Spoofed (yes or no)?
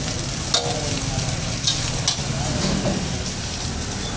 no